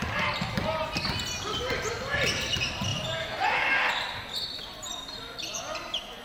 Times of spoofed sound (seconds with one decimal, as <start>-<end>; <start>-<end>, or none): none